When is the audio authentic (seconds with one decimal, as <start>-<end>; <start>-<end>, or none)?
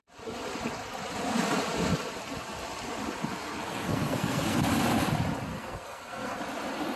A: 0.0-3.3; 4.6-5.5; 6.4-7.0